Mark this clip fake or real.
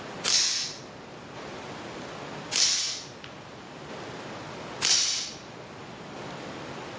real